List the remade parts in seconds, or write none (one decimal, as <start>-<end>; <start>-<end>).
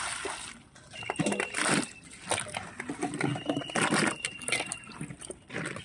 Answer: none